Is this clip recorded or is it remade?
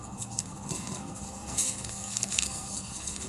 remade